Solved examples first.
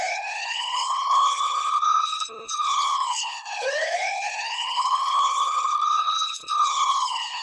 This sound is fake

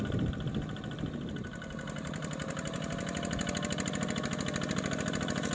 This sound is real